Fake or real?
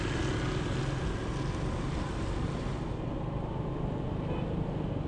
real